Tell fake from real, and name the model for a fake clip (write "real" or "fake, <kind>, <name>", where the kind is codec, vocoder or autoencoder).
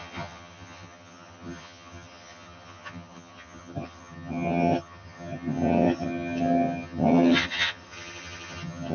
fake, vocoder, HiFi-GAN